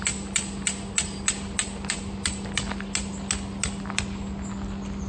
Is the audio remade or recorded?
recorded